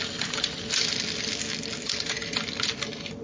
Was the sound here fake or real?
real